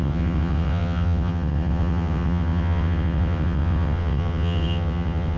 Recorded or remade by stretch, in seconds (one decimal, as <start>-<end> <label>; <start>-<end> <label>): 0.0-5.4 remade